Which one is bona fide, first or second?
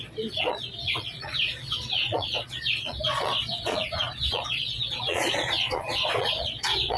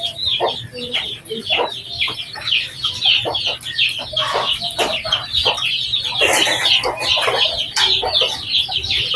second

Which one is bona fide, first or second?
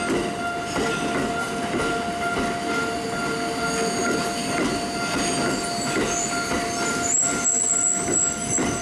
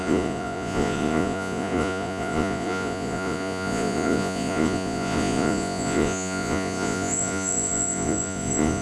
first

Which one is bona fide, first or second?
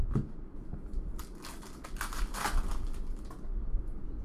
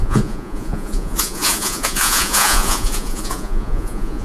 first